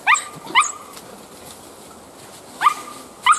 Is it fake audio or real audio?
real